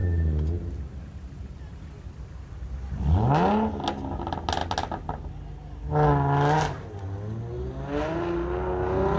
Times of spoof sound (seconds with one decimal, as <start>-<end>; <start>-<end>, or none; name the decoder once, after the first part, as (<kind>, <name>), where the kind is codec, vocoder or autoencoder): none